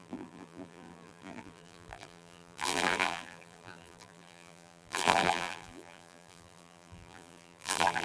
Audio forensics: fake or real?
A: fake